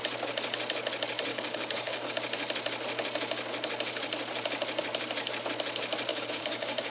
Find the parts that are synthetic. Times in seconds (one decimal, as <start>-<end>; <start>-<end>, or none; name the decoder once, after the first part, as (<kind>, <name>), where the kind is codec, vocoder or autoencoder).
1.3-2.1 (codec, DAC); 6.1-6.9